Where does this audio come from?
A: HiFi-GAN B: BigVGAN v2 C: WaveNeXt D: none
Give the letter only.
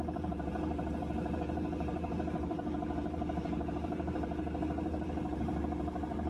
B